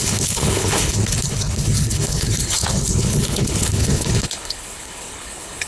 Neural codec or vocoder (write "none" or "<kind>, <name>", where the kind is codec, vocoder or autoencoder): codec, HILCodec